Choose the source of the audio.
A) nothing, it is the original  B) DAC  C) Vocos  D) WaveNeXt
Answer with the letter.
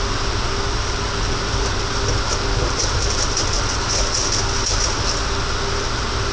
A